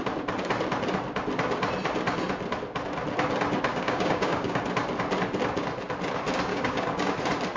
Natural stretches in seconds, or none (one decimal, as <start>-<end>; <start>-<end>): 0.0-3.7; 4.6-6.5; 7.1-7.6